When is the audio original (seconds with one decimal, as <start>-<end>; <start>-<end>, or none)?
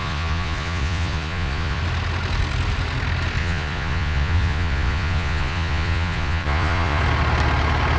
1.8-3.4; 7.0-8.0